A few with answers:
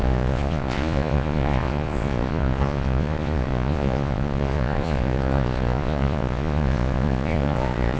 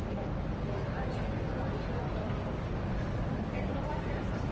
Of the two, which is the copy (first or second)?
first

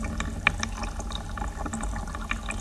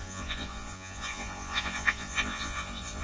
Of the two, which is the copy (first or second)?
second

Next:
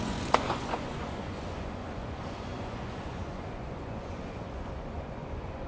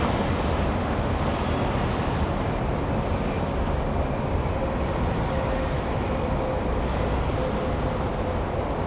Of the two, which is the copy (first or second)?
first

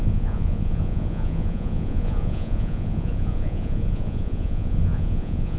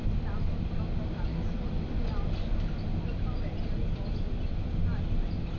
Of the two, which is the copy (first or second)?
first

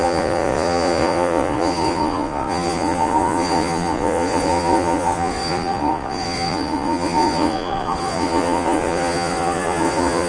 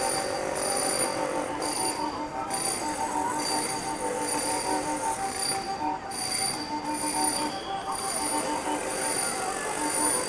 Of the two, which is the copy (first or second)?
first